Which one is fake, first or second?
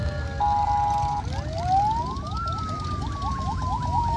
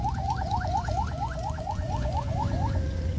second